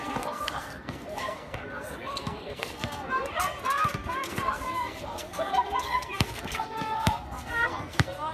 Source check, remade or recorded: remade